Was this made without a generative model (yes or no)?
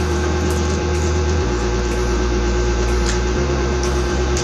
no